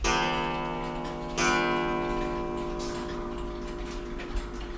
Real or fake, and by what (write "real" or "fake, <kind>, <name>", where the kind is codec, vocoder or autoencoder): real